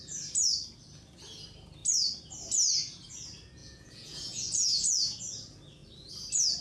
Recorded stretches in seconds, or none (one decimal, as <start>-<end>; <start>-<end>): 0.0-3.6; 5.2-6.6